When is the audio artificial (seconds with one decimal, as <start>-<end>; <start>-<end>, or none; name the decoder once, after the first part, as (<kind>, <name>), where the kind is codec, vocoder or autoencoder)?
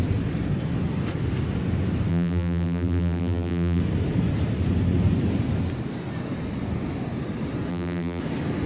2.1-3.8 (vocoder, BigVGAN v2); 7.7-8.2